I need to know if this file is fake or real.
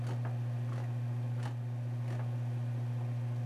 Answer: real